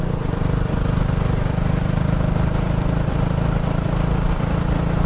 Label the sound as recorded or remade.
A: remade